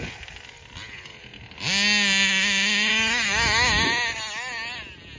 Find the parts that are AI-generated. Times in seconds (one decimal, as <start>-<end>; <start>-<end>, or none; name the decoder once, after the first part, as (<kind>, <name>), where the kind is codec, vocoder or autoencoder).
none